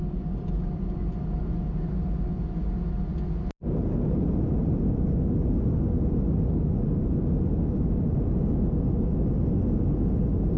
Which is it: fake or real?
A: real